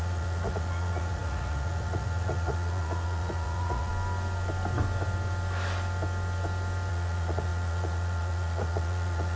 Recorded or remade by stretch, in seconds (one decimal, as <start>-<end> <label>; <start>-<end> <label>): 0.0-3.9 remade; 3.9-6.9 recorded; 6.9-9.4 remade